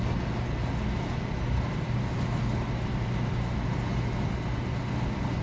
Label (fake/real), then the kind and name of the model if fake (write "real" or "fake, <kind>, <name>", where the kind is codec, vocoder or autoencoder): real